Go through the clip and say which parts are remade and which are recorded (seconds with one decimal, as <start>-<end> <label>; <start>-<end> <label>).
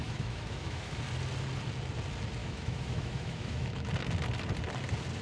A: 0.0-1.0 remade; 1.0-2.4 recorded; 2.4-3.9 remade; 3.9-5.2 recorded